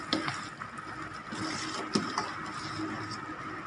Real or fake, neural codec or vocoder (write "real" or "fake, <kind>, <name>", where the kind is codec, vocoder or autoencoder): real